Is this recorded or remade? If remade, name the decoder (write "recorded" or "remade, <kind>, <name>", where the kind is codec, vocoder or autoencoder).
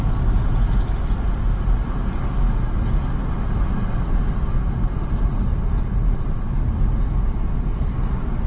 recorded